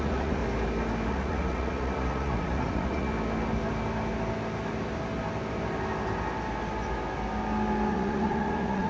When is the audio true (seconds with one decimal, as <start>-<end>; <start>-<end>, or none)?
0.4-1.1; 3.1-7.9